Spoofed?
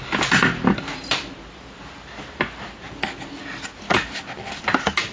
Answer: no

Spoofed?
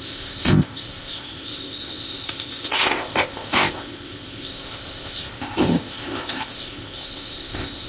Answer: yes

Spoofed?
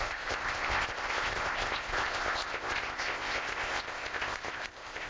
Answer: yes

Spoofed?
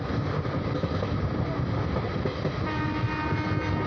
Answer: no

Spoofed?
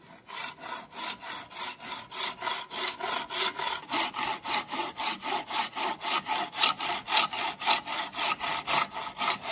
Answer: no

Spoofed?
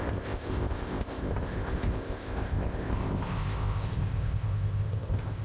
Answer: yes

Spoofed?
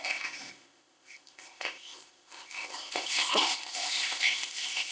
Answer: yes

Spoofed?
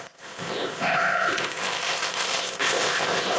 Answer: yes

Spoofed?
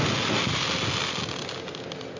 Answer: no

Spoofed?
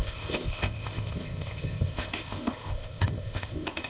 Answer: yes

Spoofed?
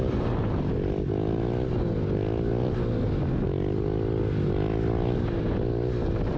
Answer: no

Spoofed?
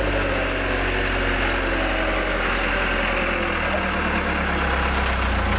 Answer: no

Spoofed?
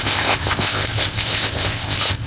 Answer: yes